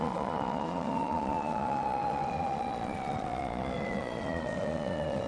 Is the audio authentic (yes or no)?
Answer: no